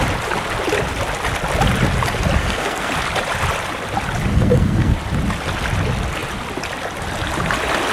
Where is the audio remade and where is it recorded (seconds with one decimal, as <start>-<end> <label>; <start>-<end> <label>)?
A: 0.0-2.4 recorded; 2.4-2.9 remade; 2.9-4.3 recorded; 4.3-5.0 remade; 5.0-7.9 recorded